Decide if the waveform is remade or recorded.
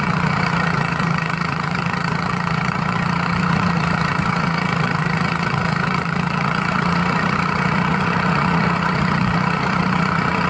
remade